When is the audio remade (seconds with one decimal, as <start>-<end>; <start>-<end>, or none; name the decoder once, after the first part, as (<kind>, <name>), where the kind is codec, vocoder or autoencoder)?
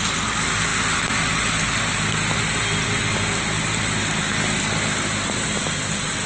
none